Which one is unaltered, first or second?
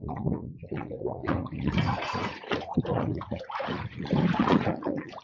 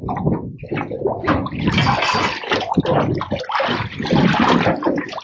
second